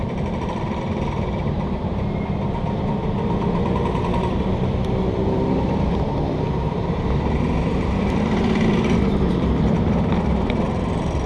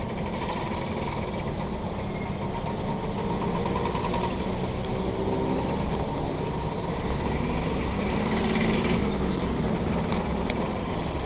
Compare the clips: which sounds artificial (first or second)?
first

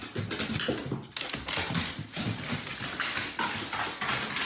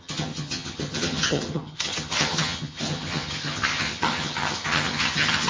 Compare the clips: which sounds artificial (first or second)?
second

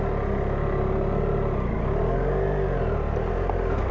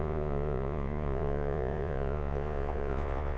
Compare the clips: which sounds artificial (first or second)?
second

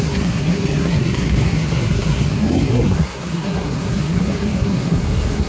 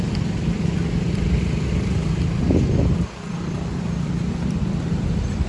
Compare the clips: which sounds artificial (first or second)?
first